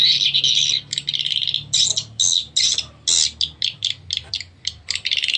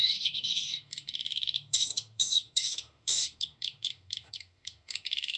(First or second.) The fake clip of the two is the second